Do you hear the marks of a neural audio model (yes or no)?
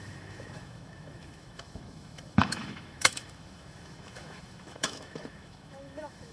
yes